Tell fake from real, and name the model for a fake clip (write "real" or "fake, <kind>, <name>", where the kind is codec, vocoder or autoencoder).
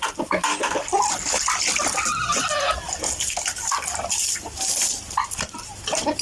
real